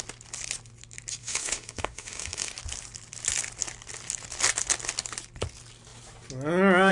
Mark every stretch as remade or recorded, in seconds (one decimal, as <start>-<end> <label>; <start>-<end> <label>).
0.0-1.2 recorded; 1.2-2.5 remade; 2.5-6.9 recorded

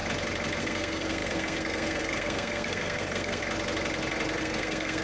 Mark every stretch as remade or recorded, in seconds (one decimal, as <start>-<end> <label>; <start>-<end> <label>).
0.0-0.6 recorded; 0.6-3.4 remade; 3.4-4.4 recorded; 4.4-5.0 remade

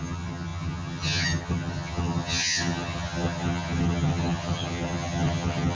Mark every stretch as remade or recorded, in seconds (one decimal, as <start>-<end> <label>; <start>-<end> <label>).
0.0-5.7 remade

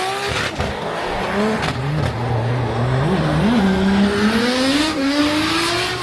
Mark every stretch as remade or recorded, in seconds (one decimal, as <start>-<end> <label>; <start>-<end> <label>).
0.0-0.7 recorded; 0.7-1.2 remade; 1.2-4.4 recorded; 4.4-5.2 remade; 5.2-6.0 recorded

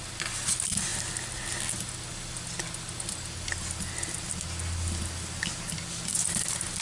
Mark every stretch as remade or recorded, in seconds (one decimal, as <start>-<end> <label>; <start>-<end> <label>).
0.0-6.8 recorded